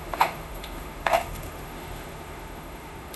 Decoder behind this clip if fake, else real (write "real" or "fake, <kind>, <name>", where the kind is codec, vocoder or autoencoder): fake, autoencoder, DAC-VAE